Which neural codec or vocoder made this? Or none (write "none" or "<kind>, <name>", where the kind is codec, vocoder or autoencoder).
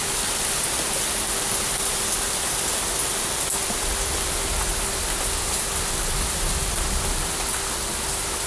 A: none